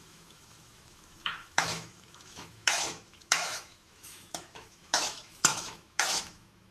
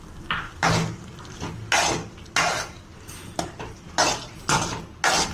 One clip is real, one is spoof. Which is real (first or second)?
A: second